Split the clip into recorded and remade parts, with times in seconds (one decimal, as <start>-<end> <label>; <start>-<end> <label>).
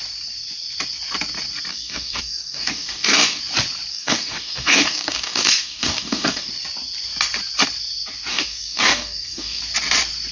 0.0-1.7 recorded; 1.7-3.4 remade; 3.4-3.9 recorded; 3.9-6.5 remade; 6.5-8.3 recorded; 8.3-9.6 remade; 9.6-10.3 recorded